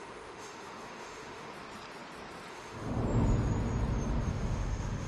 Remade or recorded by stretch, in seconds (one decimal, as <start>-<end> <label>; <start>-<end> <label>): 0.0-1.5 remade; 1.5-2.5 recorded; 2.5-3.0 remade; 3.0-4.3 recorded; 4.3-5.1 remade